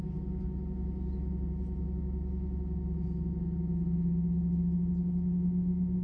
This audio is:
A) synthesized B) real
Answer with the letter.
B